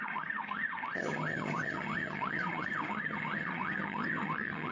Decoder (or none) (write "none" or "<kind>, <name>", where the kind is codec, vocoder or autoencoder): vocoder, HiFi-GAN